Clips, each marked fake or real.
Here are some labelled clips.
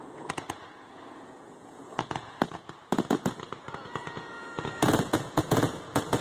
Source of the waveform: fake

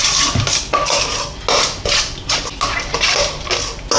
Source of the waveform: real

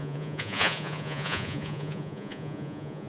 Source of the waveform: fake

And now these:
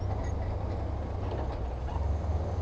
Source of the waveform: real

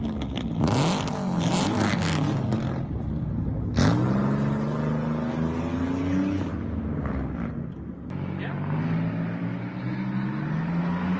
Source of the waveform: real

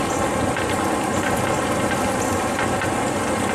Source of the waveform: real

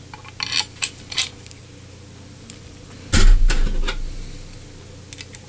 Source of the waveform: real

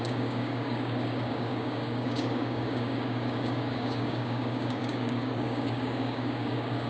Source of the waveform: fake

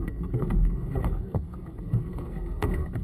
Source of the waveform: fake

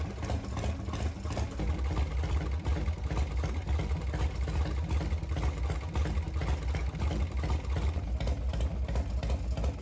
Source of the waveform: real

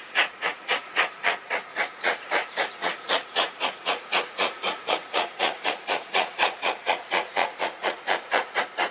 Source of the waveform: fake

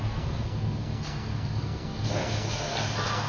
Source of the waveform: fake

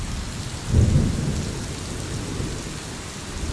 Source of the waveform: real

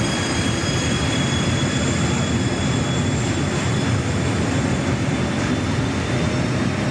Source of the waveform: fake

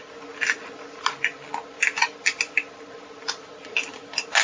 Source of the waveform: real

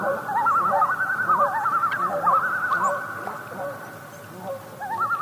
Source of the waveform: real